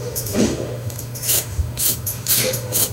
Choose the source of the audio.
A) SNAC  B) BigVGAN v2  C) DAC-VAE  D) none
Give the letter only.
C